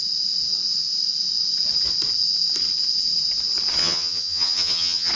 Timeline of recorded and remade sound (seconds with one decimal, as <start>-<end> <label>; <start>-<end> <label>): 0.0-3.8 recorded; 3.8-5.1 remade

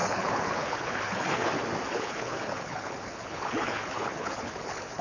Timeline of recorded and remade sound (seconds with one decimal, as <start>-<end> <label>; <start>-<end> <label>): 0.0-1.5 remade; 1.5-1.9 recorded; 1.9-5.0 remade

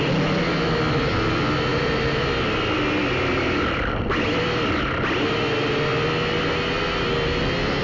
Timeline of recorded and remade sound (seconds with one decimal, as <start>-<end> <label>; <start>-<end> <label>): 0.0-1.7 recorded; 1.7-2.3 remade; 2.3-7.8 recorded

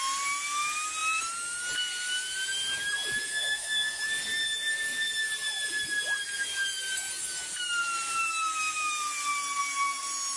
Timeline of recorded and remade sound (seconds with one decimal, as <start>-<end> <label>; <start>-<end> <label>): 0.0-3.3 recorded; 3.3-4.0 remade; 4.0-10.4 recorded

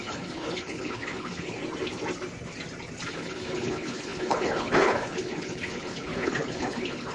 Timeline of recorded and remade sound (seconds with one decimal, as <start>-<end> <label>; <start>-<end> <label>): 0.0-1.6 remade; 1.6-3.1 recorded; 3.1-7.1 remade

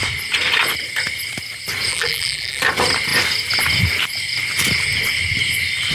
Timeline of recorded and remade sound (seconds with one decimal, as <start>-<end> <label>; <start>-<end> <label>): 0.0-1.9 recorded; 1.9-2.6 remade; 2.6-5.9 recorded

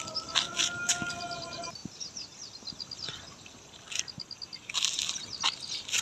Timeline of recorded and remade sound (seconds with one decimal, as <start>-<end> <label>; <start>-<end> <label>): 0.0-6.0 recorded

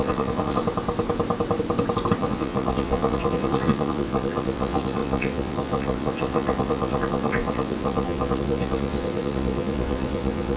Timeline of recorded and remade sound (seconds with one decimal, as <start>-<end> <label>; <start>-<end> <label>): 0.0-0.6 remade; 0.6-2.2 recorded; 2.2-10.6 remade